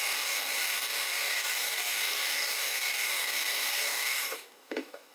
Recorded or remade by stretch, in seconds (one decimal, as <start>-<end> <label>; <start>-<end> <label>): 0.0-5.1 remade